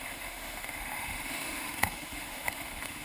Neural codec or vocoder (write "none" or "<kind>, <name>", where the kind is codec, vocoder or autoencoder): autoencoder, DAC-VAE